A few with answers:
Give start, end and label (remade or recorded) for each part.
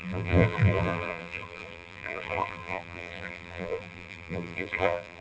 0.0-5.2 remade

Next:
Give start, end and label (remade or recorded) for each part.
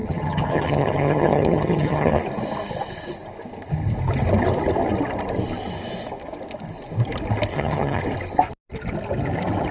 0.0-2.2 remade; 2.2-7.5 recorded; 7.5-8.0 remade; 8.0-9.7 recorded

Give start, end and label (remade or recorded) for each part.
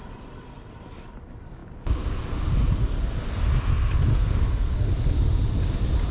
0.0-4.1 recorded; 4.1-4.9 remade; 4.9-6.1 recorded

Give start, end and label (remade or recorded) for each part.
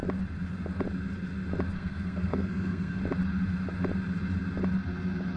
0.0-1.7 recorded; 1.7-3.0 remade; 3.0-5.4 recorded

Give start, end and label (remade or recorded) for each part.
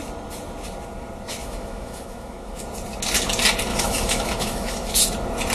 0.0-1.4 recorded; 1.4-2.6 remade; 2.6-3.7 recorded; 3.7-5.0 remade; 5.0-5.5 recorded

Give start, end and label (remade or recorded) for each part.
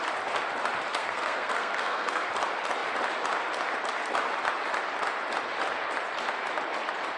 0.0-1.0 recorded; 1.0-2.3 remade; 2.3-7.2 recorded